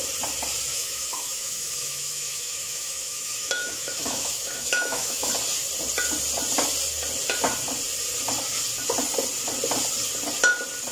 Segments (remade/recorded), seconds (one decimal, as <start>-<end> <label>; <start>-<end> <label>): 0.0-0.7 recorded; 0.7-5.3 remade; 5.3-10.9 recorded